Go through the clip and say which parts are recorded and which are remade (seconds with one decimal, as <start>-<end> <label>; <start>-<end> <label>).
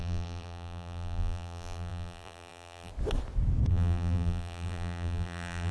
0.0-2.9 remade; 2.9-3.7 recorded; 3.7-5.7 remade